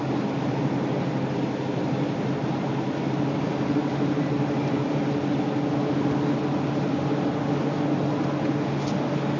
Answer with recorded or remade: recorded